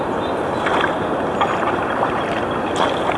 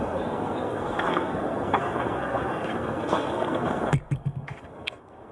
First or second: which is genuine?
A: first